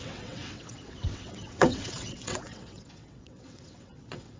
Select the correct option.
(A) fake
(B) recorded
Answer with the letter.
A